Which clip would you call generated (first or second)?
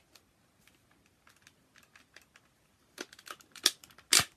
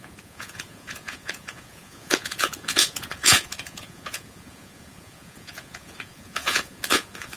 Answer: second